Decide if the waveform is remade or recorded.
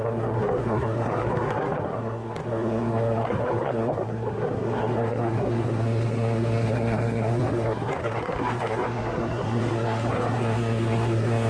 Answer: remade